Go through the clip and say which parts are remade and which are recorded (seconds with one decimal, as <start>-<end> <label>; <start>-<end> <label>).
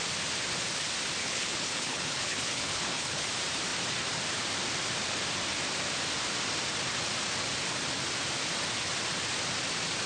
0.0-1.2 recorded; 1.2-3.2 remade; 3.2-10.1 recorded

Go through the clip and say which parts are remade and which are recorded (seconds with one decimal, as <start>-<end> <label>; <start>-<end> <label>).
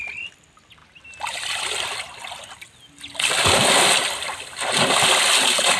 0.0-5.8 recorded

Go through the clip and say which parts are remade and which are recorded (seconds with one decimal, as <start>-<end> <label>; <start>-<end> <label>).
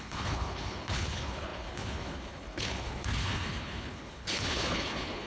0.0-5.3 remade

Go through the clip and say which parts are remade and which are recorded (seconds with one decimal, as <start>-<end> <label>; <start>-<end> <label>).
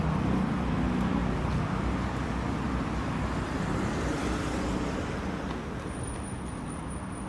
0.0-7.3 recorded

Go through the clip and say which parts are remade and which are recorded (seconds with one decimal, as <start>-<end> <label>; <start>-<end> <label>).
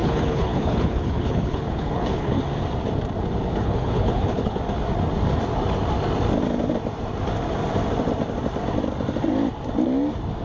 0.0-2.4 remade; 2.4-3.5 recorded; 3.5-4.6 remade; 4.6-10.4 recorded